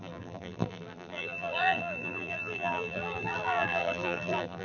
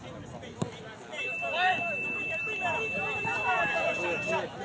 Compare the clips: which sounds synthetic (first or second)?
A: first